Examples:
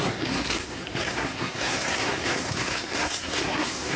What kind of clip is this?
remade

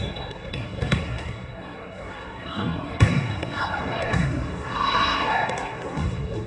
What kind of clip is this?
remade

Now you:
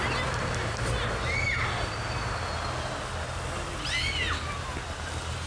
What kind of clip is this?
recorded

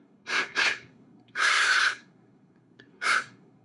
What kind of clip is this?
remade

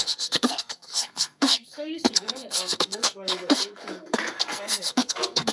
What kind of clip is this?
remade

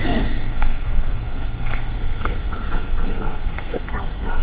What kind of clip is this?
remade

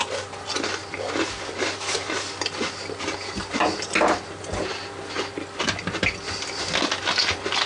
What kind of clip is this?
recorded